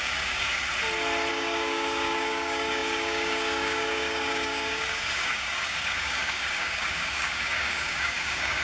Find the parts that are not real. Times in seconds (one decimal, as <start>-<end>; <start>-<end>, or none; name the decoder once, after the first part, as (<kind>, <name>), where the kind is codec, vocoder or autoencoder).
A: 0.0-0.6 (codec, DAC); 1.3-8.6